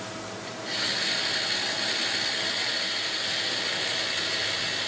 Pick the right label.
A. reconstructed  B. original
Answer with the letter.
B